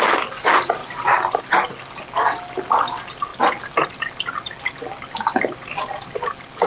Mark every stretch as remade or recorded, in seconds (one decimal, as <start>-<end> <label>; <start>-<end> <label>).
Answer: 0.0-0.8 recorded; 0.8-1.4 remade; 1.4-6.7 recorded